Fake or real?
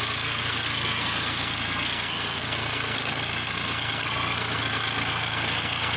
fake